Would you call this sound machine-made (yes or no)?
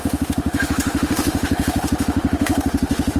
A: yes